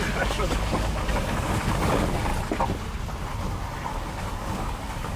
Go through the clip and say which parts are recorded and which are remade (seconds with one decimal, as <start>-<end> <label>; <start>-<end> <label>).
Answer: 0.0-2.3 remade; 2.3-3.9 recorded; 3.9-5.2 remade